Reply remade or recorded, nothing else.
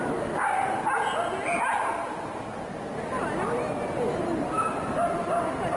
recorded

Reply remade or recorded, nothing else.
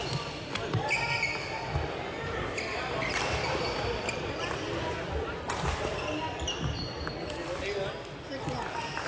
recorded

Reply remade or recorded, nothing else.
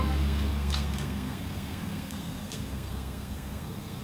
remade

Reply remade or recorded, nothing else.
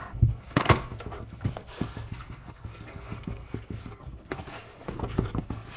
remade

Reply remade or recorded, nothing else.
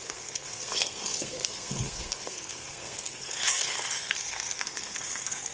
remade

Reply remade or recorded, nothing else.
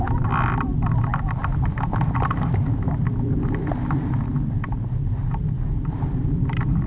recorded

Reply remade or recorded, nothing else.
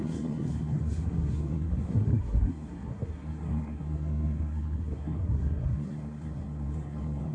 remade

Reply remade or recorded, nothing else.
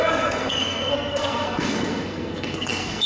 remade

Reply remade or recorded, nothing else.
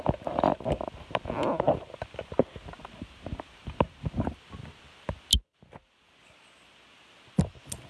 recorded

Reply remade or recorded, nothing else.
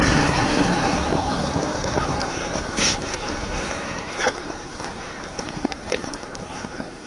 remade